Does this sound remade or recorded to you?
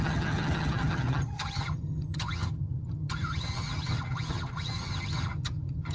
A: remade